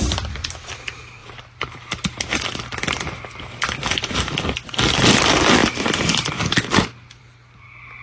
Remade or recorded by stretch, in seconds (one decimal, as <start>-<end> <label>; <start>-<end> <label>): 0.0-8.0 recorded